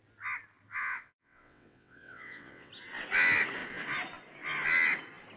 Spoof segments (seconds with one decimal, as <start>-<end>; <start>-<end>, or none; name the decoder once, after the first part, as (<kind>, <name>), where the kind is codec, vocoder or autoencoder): 0.8-2.7 (vocoder, WaveNeXt)